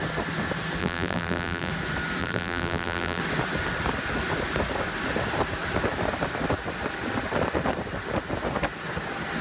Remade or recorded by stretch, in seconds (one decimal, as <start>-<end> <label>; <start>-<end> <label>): 0.0-0.8 recorded; 0.8-1.7 remade; 1.7-2.2 recorded; 2.2-3.2 remade; 3.2-9.4 recorded